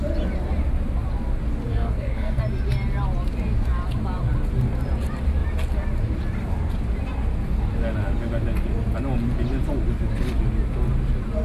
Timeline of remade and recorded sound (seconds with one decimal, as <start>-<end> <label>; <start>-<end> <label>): 0.0-1.7 recorded; 1.7-2.4 remade; 2.4-11.4 recorded